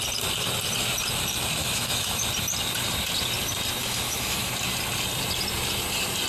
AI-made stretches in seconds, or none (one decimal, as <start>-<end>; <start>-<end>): 1.6-2.2; 3.8-4.5